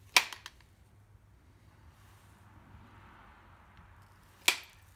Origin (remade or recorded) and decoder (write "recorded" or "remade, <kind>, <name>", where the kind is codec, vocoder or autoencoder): recorded